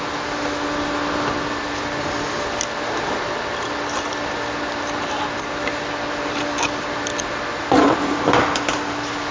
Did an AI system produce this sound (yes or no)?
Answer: no